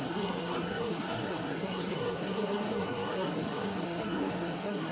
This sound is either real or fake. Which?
fake